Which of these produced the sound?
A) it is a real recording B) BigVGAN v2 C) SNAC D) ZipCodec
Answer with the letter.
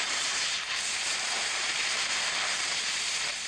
B